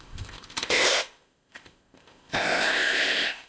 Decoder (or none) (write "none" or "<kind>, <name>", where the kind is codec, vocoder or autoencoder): codec, ZipCodec